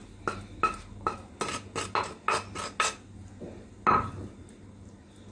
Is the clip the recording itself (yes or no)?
yes